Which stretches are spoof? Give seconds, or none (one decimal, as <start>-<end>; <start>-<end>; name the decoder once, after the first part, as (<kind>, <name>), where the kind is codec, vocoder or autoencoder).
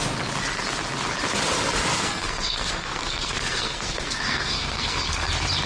1.9-5.3 (codec, SNAC)